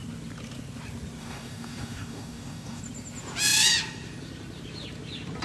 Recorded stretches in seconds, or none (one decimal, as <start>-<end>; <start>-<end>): 0.0-1.2; 2.8-5.4